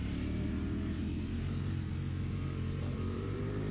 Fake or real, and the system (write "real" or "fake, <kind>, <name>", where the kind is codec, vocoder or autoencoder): fake, vocoder, BigVGAN v2